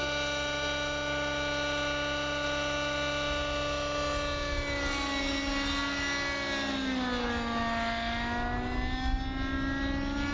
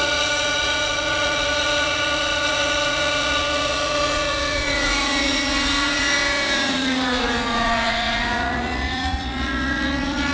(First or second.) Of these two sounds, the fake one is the second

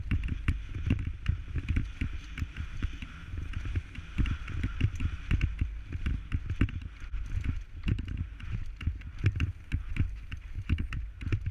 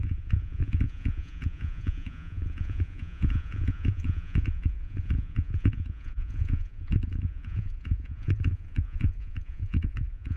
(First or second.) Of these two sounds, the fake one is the second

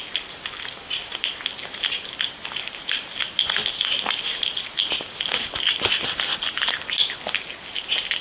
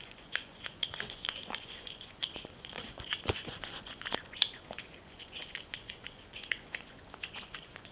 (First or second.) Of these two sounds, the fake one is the second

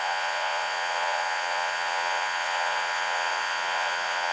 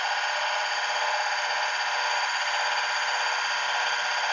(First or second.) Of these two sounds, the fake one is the first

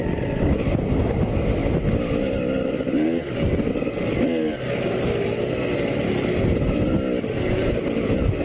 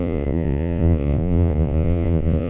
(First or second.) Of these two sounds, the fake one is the second